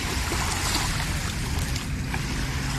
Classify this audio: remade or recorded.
recorded